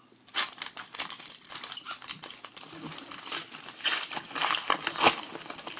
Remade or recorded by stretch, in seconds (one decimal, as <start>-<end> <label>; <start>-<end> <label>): 0.0-5.8 recorded